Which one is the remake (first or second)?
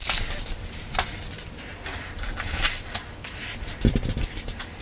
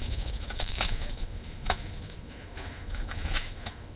second